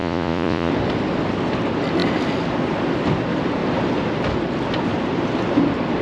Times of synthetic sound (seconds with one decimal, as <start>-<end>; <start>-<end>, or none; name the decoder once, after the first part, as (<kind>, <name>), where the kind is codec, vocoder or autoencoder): 0.0-0.7 (vocoder, Vocos)